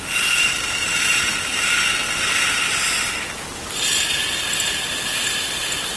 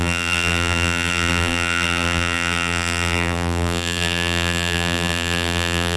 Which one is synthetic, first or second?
second